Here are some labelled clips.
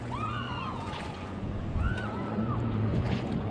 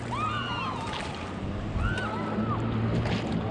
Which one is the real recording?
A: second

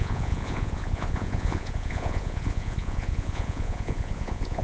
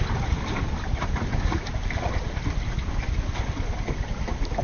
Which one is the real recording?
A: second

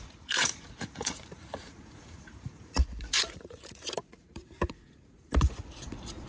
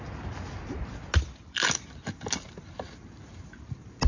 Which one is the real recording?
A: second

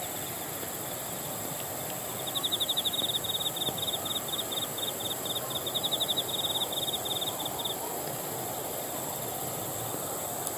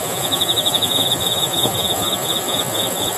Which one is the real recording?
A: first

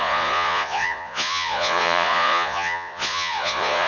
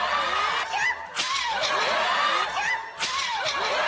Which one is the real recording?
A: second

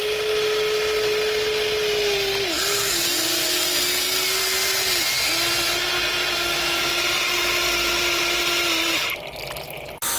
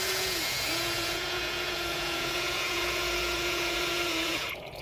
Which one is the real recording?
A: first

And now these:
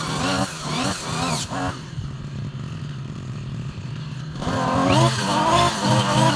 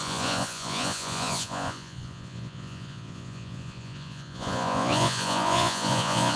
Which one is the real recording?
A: first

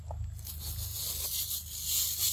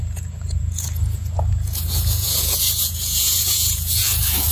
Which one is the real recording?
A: first